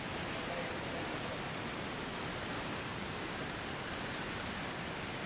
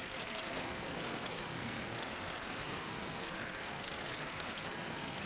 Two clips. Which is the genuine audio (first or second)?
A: first